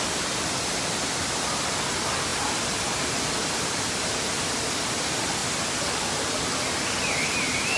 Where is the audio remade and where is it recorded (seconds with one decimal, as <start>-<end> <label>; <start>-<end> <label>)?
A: 0.0-5.4 remade; 5.4-6.8 recorded; 6.8-7.8 remade